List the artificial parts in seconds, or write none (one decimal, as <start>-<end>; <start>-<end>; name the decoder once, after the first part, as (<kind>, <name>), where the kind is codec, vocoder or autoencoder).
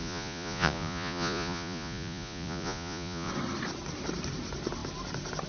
0.0-3.3 (vocoder, Vocos)